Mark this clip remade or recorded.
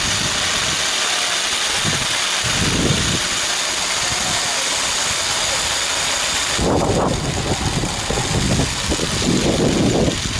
recorded